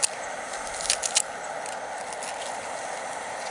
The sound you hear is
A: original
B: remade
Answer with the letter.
A